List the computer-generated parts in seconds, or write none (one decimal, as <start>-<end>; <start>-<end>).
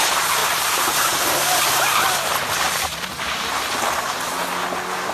0.4-2.8